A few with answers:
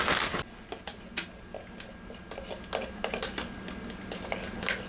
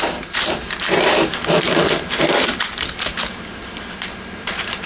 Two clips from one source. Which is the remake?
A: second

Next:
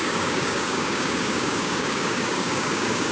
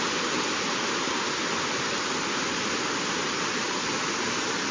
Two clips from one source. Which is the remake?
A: first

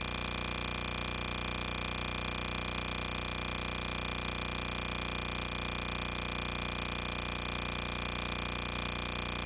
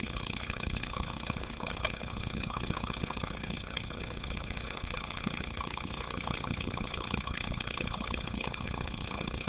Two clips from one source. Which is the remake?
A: second